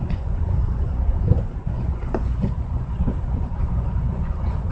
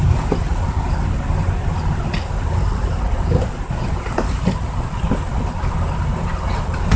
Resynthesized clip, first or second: first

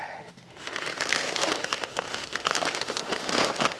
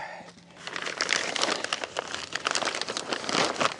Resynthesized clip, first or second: first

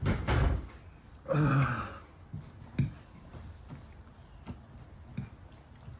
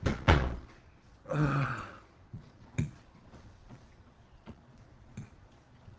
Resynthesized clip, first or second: second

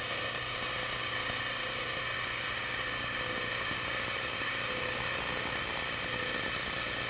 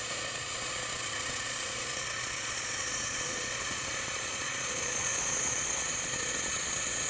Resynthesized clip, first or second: second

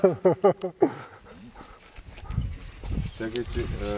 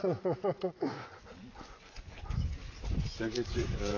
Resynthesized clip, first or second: second